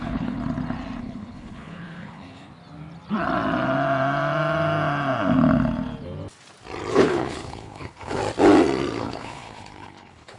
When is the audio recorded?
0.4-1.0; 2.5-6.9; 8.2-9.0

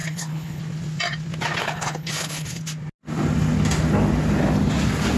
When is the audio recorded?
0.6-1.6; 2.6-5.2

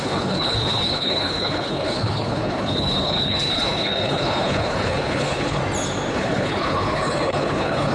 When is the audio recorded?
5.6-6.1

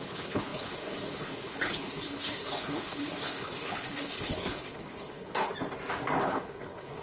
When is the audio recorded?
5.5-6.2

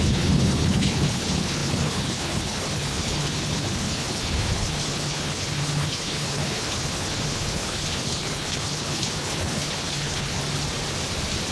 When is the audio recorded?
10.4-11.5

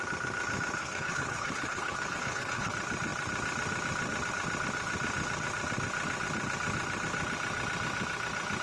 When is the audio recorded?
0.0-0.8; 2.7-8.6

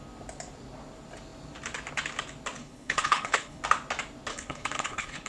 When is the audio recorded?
0.0-2.6; 3.6-4.3

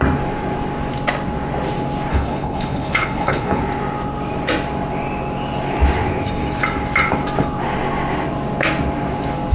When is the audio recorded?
0.0-2.1; 3.6-9.5